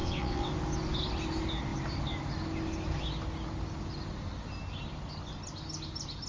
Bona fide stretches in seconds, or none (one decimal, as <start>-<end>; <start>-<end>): 0.5-6.3